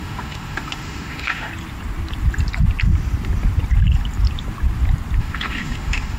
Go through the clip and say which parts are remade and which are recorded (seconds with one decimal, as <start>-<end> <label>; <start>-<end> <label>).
0.0-1.5 remade; 1.5-5.2 recorded; 5.2-6.2 remade